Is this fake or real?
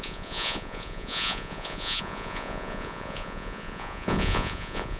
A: fake